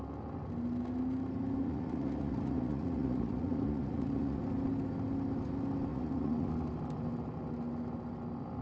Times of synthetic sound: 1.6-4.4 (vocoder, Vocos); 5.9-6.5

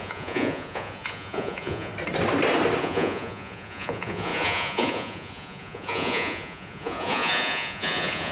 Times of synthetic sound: 0.0-1.9 (vocoder, Vocos); 2.8-8.3

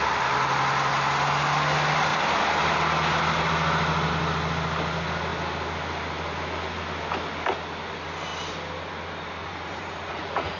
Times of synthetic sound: 9.4-10.6 (vocoder, Vocos)

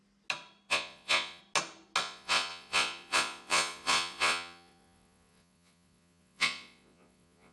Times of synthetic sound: 0.7-1.4 (vocoder, Vocos); 2.0-7.5